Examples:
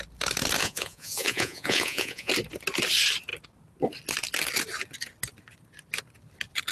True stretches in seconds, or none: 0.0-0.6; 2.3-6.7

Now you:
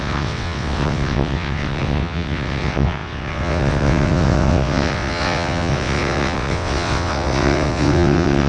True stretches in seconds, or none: none

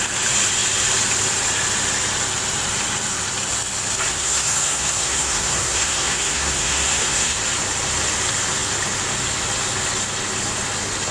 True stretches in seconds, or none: 0.0-4.1; 7.4-11.1

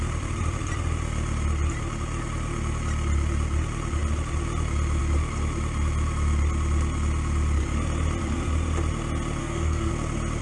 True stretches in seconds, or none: 0.0-9.4; 9.9-10.4

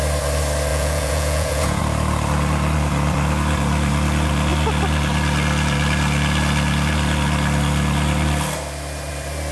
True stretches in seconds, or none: 0.0-0.7; 1.8-9.5